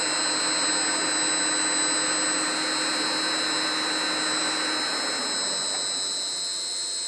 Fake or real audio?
real